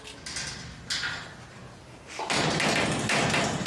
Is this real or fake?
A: real